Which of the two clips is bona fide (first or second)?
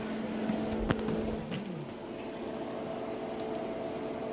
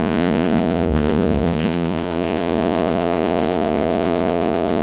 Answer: first